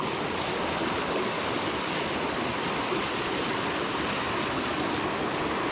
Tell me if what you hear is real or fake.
real